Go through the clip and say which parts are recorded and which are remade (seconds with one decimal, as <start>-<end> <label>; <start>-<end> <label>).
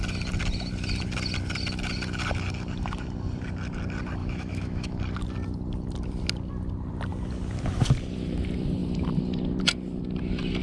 0.0-4.2 recorded; 4.2-5.0 remade; 5.0-10.6 recorded